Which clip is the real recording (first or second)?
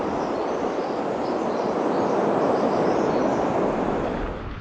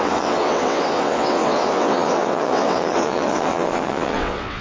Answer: first